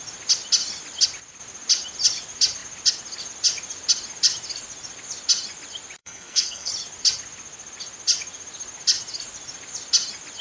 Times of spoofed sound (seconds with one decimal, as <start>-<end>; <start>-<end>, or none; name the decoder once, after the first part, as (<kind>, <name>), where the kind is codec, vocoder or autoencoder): 6.0-6.7 (codec, SNAC)

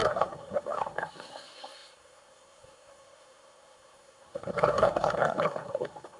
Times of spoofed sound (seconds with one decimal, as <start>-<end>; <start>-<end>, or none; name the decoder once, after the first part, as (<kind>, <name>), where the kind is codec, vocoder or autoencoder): 0.0-6.2 (codec, SNAC)

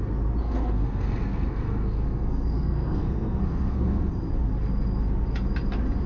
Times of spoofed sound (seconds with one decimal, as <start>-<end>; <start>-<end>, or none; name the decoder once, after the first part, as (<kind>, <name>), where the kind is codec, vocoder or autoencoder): 0.4-4.1 (codec, SNAC)

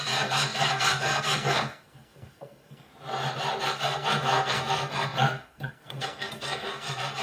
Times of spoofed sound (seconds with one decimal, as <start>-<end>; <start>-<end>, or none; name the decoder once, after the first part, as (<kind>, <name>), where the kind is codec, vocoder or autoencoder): 0.0-2.9 (codec, SNAC); 3.6-7.2

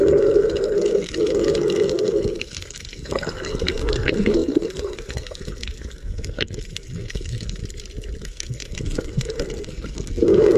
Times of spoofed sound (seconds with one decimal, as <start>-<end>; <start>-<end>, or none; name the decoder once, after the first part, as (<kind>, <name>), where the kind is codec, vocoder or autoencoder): 0.0-7.6 (codec, SNAC); 8.2-10.6

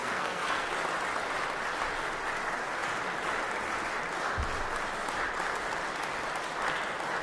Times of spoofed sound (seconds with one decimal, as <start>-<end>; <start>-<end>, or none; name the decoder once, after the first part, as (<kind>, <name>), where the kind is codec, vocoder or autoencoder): 0.0-0.7 (codec, SNAC)

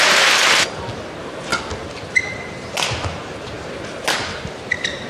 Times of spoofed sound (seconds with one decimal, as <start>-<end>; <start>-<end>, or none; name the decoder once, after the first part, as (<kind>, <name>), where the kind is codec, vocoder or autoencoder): none